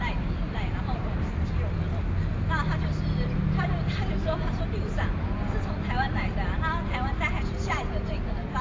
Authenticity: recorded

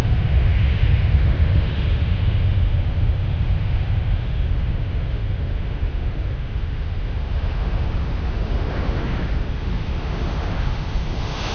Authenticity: remade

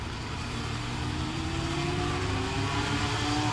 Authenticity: remade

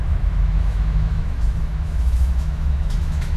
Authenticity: remade